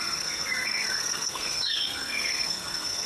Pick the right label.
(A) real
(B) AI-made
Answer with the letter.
B